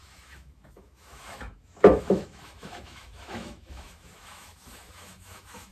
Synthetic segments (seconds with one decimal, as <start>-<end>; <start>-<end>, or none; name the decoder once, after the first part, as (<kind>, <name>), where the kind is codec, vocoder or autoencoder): 0.0-5.7 (autoencoder, DAC-VAE)